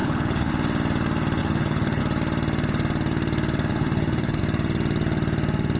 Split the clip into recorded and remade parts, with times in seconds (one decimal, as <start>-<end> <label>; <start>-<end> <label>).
0.0-0.5 remade; 0.5-1.4 recorded; 1.4-2.0 remade; 2.0-3.7 recorded; 3.7-4.4 remade; 4.4-5.8 recorded